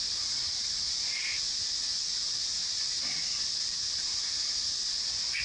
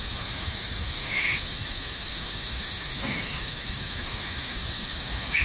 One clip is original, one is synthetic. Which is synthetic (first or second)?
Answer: second